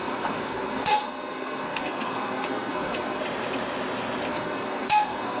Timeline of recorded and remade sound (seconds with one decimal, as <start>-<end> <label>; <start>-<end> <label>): 0.0-3.2 remade; 3.2-4.3 recorded; 4.3-5.4 remade